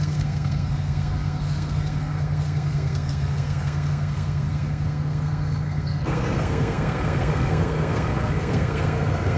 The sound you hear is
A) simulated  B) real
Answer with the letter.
A